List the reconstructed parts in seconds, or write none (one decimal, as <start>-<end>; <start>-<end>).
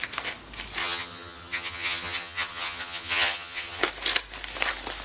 0.8-3.8